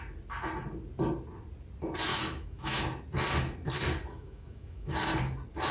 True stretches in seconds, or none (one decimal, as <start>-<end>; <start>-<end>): 0.0-2.1; 2.8-4.1; 5.0-5.7